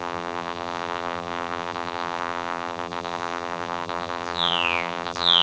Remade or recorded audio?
remade